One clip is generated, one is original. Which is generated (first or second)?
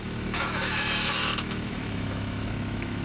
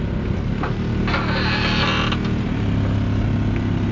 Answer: first